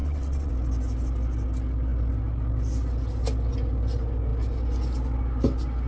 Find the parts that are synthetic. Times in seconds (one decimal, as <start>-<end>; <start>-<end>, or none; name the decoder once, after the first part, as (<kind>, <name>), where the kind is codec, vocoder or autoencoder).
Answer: 0.0-0.5 (vocoder, WaveNeXt)